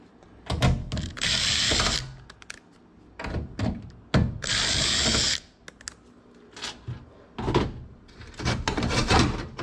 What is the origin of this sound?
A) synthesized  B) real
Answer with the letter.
B